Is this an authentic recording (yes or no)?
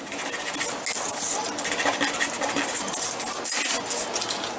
yes